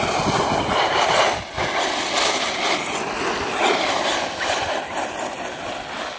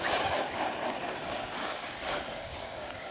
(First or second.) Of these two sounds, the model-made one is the second